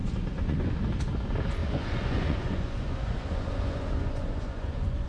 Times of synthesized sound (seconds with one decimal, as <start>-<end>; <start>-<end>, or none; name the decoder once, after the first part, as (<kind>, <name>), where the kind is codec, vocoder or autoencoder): 0.0-0.7 (vocoder, Vocos); 1.6-5.1